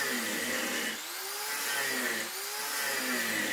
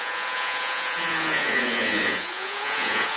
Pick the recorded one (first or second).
first